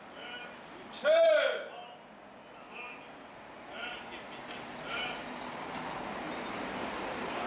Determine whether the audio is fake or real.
real